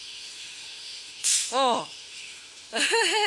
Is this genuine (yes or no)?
no